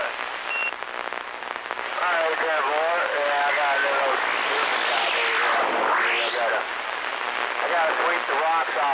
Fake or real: real